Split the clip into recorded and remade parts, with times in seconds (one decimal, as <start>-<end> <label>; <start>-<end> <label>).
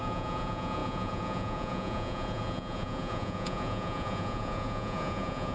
0.0-5.5 remade